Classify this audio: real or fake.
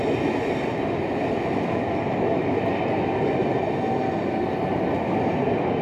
real